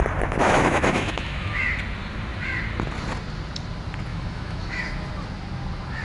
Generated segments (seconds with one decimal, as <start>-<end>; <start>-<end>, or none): 0.4-1.6; 4.1-4.8